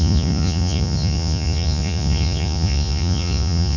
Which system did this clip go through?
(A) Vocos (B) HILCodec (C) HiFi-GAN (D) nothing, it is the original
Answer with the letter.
A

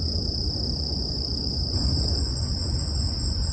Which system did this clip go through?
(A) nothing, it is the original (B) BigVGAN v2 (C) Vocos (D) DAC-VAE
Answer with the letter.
C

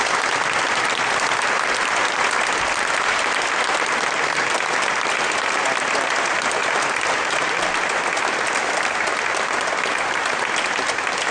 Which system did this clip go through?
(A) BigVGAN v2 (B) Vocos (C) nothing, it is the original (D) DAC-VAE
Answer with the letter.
C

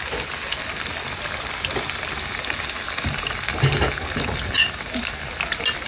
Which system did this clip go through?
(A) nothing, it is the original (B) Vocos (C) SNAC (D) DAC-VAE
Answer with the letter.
A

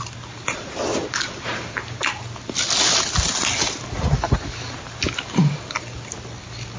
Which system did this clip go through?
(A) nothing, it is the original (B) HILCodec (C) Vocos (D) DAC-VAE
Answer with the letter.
A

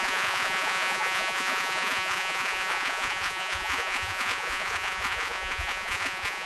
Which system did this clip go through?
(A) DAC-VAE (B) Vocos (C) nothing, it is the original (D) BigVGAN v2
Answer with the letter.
B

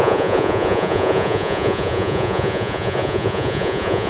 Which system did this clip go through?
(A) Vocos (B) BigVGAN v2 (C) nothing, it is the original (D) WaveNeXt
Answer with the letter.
A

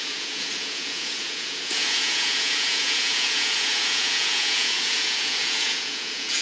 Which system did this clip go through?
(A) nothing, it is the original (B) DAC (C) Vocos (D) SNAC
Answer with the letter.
C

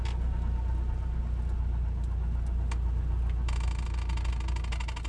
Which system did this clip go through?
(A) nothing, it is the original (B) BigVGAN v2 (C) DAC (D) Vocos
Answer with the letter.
A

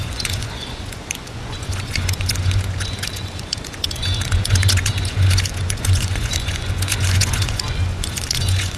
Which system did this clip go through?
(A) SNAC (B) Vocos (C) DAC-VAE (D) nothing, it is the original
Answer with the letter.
B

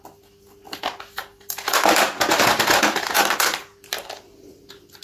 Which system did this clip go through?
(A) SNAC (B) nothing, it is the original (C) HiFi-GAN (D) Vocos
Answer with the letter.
B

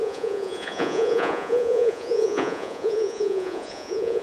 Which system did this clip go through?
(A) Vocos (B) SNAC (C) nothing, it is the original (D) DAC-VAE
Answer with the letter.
A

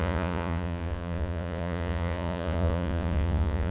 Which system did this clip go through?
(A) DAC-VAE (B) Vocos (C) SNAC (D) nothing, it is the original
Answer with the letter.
B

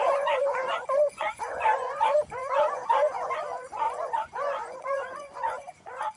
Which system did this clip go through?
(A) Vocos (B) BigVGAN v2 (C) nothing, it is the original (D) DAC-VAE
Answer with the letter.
A